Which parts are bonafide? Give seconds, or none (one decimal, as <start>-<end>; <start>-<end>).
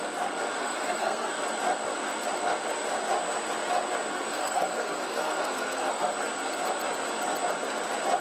0.0-0.6; 1.3-4.1; 6.1-8.2